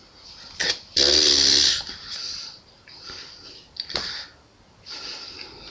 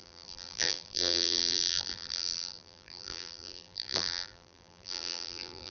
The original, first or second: first